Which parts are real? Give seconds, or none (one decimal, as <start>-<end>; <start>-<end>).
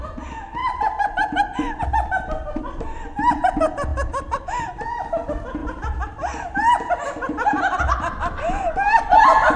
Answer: 0.0-0.6; 1.8-5.6; 7.9-9.6